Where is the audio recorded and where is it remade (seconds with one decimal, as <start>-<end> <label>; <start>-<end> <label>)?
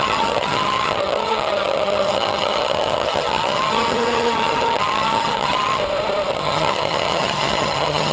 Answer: 0.0-5.8 remade; 5.8-6.3 recorded; 6.3-8.1 remade